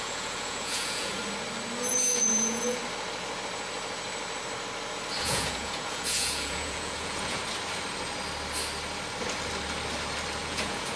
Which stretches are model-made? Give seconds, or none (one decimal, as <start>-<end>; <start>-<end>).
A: 0.0-1.2; 1.9-2.8; 5.2-7.4; 10.4-11.0